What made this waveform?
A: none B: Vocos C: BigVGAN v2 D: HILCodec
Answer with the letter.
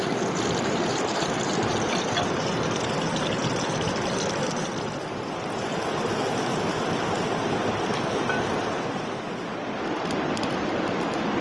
A